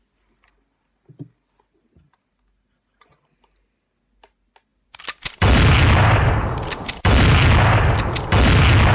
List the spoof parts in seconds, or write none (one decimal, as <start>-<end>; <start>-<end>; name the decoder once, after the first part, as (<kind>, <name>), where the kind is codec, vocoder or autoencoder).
4.7-7.5 (vocoder, BigVGAN v2)